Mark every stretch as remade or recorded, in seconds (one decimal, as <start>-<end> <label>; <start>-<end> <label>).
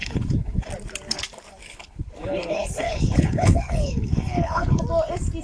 0.0-0.7 remade; 0.7-1.6 recorded; 1.6-4.8 remade; 4.8-5.4 recorded